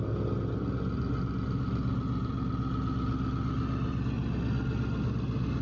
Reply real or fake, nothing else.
real